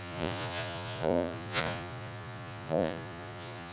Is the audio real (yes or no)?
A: no